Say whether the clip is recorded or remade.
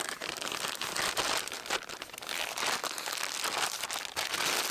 recorded